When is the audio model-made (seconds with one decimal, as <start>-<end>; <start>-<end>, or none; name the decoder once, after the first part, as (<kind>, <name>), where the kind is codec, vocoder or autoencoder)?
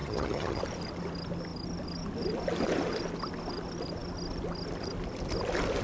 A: 0.0-0.6 (vocoder, HiFi-GAN)